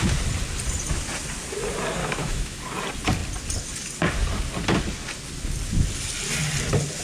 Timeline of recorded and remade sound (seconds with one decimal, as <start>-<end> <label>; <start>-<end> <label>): 0.0-2.0 recorded; 2.0-2.6 remade; 2.6-7.0 recorded